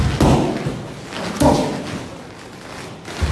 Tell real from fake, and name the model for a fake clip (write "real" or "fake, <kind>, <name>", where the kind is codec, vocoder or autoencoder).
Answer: real